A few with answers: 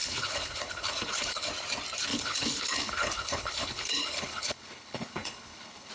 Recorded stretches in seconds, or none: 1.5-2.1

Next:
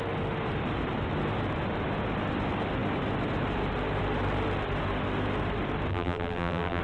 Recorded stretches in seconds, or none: 0.0-5.9

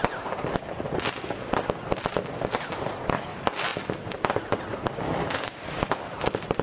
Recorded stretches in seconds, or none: 0.0-6.6

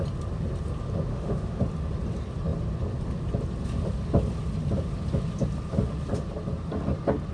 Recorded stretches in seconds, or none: 0.0-1.1; 1.6-7.3